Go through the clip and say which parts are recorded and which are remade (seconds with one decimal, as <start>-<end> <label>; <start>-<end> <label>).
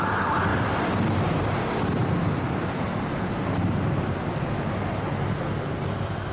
0.0-0.5 recorded; 0.5-1.6 remade; 1.6-2.0 recorded; 2.0-4.2 remade; 4.2-6.3 recorded